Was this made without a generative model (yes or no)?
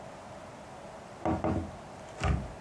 yes